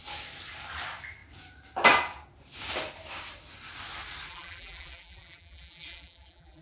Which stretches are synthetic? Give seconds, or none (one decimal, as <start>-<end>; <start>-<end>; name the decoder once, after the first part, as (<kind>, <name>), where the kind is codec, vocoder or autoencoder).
4.3-6.6 (vocoder, BigVGAN v2)